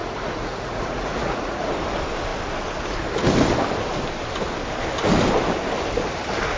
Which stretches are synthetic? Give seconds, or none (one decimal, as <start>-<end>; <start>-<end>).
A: 0.0-1.7